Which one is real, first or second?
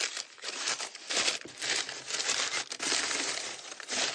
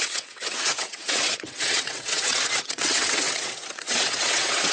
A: first